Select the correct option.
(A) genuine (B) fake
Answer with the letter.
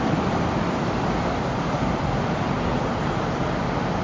B